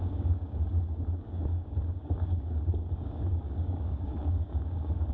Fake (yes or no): yes